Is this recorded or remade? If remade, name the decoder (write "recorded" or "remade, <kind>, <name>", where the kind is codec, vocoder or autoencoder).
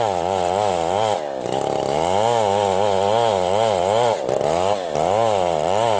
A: recorded